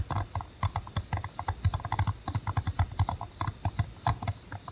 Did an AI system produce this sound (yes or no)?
no